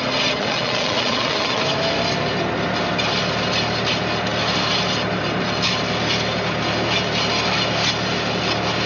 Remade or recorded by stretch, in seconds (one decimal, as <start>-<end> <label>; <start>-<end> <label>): 0.0-0.4 recorded; 0.4-1.6 remade; 1.6-8.9 recorded